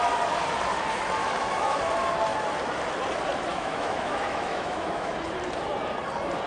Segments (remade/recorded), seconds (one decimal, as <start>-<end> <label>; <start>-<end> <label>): 0.0-1.2 recorded; 1.2-1.8 remade; 1.8-3.5 recorded; 3.5-5.1 remade; 5.1-6.5 recorded